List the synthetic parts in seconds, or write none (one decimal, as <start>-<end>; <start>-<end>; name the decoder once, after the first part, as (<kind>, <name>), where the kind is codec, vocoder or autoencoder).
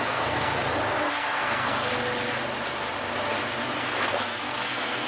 0.0-0.5 (codec, SNAC); 1.1-1.9; 3.8-5.1